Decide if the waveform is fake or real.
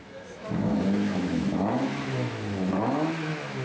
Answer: fake